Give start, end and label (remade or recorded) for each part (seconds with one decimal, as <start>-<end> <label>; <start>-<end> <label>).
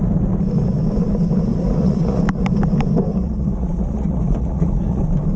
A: 0.0-1.5 recorded; 1.5-2.2 remade; 2.2-3.1 recorded; 3.1-5.0 remade; 5.0-5.4 recorded